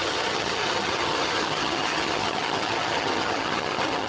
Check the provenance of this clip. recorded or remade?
remade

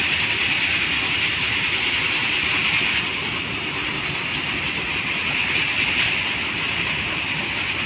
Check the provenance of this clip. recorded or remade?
recorded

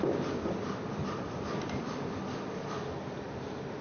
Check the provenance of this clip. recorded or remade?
recorded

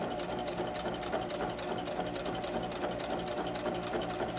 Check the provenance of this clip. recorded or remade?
recorded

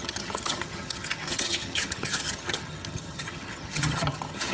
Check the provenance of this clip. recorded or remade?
remade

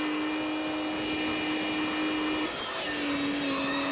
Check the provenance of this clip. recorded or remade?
recorded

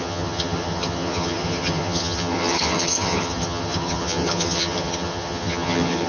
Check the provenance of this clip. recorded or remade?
remade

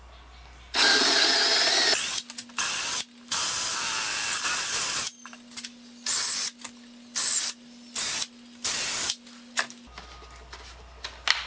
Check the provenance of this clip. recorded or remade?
recorded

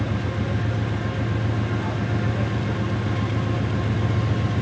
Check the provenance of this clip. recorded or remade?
recorded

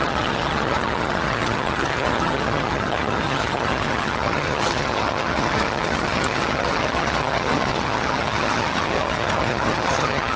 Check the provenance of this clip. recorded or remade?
remade